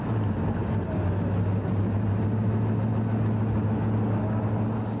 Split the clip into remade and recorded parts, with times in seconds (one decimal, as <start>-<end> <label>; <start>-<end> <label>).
0.0-5.0 recorded

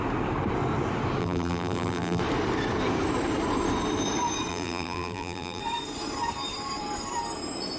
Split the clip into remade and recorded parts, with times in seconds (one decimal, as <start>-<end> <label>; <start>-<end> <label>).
0.0-1.2 recorded; 1.2-2.2 remade; 2.2-4.5 recorded; 4.5-5.6 remade; 5.6-7.8 recorded

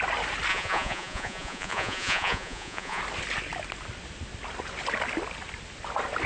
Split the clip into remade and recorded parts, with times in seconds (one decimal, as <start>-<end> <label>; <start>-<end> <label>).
0.0-0.5 recorded; 0.5-3.0 remade; 3.0-6.3 recorded

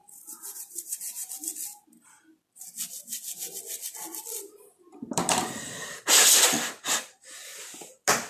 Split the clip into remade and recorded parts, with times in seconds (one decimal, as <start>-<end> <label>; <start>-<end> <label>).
0.0-1.3 remade; 1.3-8.3 recorded

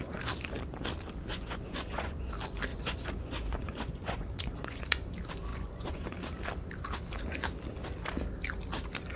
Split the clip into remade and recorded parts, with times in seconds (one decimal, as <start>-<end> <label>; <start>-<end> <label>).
0.0-1.3 recorded; 1.3-2.3 remade; 2.3-2.7 recorded; 2.7-5.1 remade; 5.1-5.5 recorded; 5.5-6.1 remade; 6.1-9.2 recorded